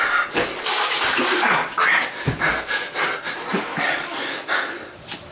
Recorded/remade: remade